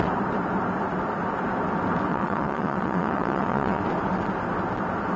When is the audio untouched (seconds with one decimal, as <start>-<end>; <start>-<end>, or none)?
0.0-2.1; 3.8-5.2

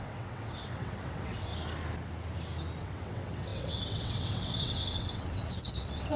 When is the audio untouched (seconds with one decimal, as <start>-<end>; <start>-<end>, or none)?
1.5-2.8

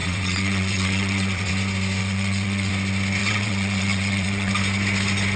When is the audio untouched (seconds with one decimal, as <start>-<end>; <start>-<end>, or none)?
1.5-2.0; 2.7-3.2; 4.5-5.4

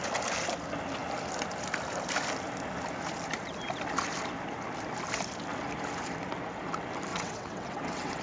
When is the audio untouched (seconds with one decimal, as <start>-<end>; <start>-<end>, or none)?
0.0-7.1